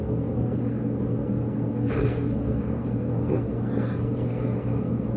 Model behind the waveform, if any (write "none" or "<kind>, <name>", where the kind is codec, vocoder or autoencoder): codec, SNAC